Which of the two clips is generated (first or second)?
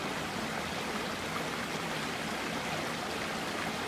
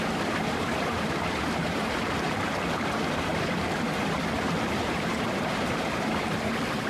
second